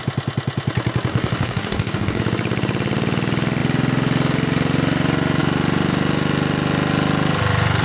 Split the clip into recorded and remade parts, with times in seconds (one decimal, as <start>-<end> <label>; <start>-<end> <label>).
0.0-1.1 recorded; 1.1-2.2 remade; 2.2-7.8 recorded